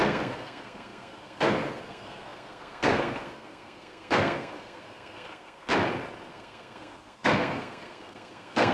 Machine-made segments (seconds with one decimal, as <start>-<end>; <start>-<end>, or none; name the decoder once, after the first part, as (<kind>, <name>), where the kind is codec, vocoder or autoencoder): 0.0-5.7 (codec, SNAC); 6.3-8.7